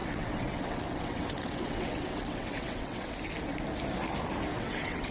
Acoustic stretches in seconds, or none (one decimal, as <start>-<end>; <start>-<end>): 3.1-4.5